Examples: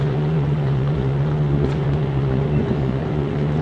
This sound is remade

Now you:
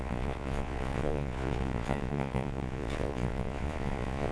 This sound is remade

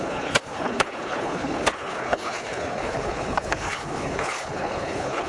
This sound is remade